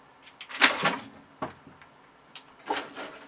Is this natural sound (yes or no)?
yes